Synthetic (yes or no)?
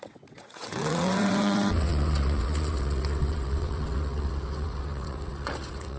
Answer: yes